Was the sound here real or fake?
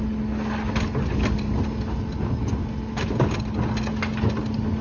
real